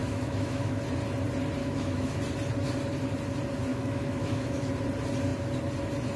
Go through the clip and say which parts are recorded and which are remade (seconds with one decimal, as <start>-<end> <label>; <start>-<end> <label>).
0.0-0.8 remade; 0.8-1.6 recorded; 1.6-2.2 remade; 2.2-3.7 recorded; 3.7-4.7 remade; 4.7-6.2 recorded